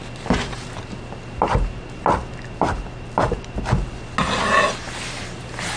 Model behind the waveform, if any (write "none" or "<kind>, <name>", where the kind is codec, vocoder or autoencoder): none